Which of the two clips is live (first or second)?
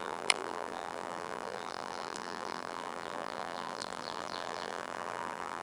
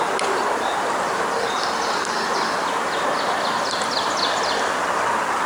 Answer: second